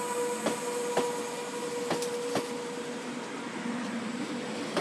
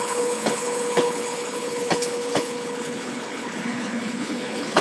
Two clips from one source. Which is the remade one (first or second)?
second